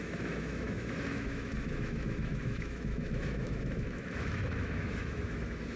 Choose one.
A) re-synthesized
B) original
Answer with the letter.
A